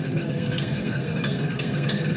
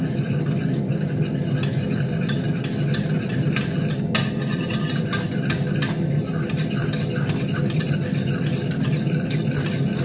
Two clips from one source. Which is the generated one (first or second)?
first